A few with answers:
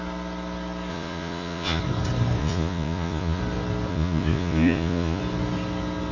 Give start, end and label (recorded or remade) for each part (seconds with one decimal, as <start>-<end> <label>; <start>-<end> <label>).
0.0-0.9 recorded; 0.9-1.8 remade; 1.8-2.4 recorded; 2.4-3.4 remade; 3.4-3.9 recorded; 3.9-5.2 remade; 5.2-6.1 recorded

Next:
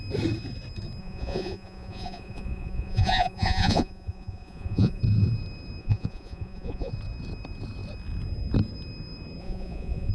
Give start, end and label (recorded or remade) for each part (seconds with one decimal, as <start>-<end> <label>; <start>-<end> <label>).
0.0-1.0 recorded; 1.0-5.0 remade; 5.0-5.8 recorded; 5.8-6.9 remade; 6.9-9.4 recorded; 9.4-10.1 remade

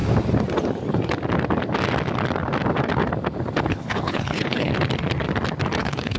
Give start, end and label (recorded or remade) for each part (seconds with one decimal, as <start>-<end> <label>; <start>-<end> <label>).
0.0-3.7 recorded; 3.7-4.7 remade; 4.7-5.8 recorded; 5.8-6.2 remade

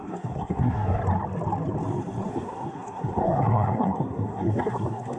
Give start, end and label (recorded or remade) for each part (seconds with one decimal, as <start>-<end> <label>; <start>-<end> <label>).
0.0-1.0 remade; 1.0-2.3 recorded; 2.3-5.2 remade

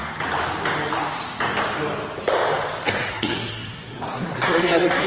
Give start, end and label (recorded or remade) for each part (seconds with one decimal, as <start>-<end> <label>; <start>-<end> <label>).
0.0-3.1 recorded; 3.1-5.1 remade

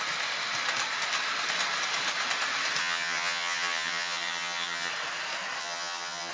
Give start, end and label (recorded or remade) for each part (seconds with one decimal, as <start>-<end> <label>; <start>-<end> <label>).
0.0-2.8 recorded; 2.8-4.9 remade; 4.9-5.6 recorded; 5.6-6.3 remade

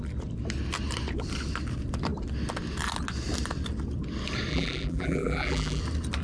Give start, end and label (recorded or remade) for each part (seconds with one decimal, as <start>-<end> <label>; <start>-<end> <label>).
0.0-4.5 recorded; 4.5-5.8 remade; 5.8-6.2 recorded